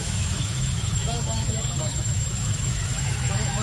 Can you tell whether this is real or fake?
fake